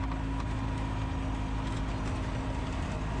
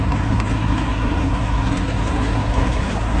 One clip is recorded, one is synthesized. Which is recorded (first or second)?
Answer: first